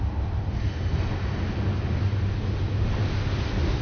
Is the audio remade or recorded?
recorded